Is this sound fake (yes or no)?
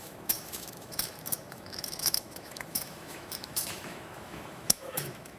yes